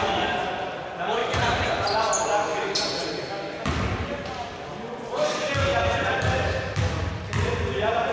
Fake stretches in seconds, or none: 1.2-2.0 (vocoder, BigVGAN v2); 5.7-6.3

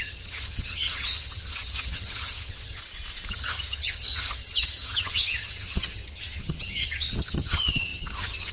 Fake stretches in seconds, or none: 0.0-2.8 (vocoder, HiFi-GAN); 3.3-8.5

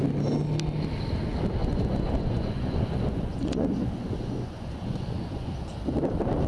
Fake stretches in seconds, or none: 1.6-5.5 (vocoder, Vocos)

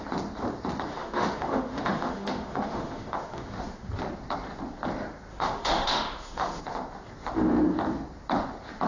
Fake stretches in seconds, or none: 0.9-3.9 (autoencoder, DAC-VAE); 5.3-6.6

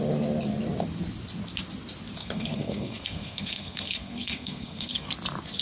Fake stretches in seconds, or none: 2.2-5.1 (codec, SNAC)

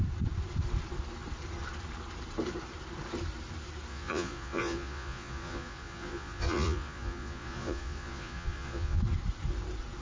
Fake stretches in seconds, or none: 3.9-9.0 (vocoder, Vocos)

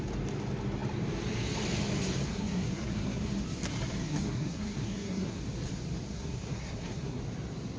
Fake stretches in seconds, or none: 2.3-3.3 (codec, SNAC); 4.0-5.4; 6.1-7.2